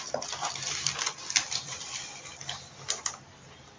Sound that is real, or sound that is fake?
real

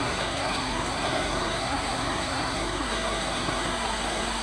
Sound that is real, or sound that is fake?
fake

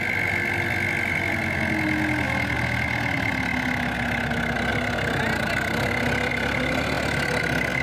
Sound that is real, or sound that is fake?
real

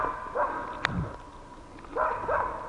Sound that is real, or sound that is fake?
real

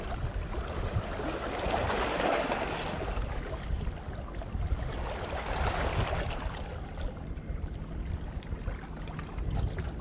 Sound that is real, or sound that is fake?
real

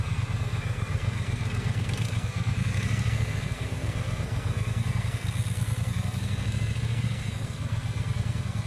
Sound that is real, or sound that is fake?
fake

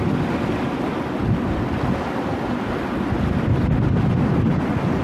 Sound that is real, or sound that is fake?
real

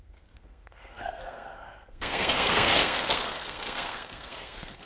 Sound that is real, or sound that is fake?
fake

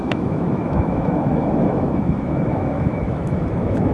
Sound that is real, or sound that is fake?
fake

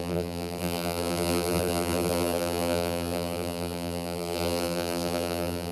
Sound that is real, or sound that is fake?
fake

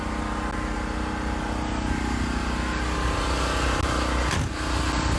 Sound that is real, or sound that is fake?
real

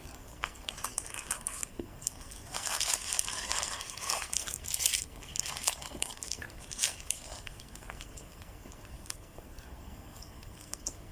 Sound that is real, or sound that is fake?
fake